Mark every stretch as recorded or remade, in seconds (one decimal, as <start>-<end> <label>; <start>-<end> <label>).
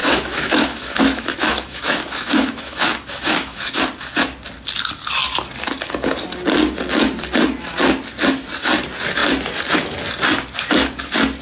0.0-3.8 remade; 3.8-11.4 recorded